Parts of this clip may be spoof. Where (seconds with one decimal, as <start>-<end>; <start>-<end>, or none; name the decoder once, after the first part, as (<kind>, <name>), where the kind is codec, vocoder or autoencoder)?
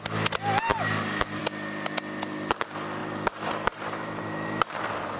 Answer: 0.7-1.4 (vocoder, BigVGAN v2); 3.0-4.8